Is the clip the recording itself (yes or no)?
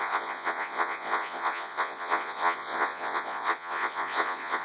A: no